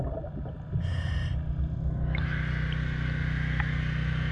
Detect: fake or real real